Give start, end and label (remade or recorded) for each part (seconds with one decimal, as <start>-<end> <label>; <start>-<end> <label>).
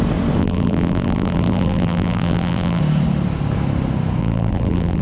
0.0-0.4 recorded; 0.4-2.8 remade; 2.8-4.2 recorded; 4.2-5.0 remade